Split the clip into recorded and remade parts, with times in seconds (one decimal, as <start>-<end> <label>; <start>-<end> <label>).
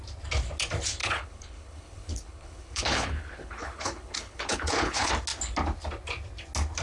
0.0-1.0 recorded; 1.0-5.1 remade; 5.1-6.8 recorded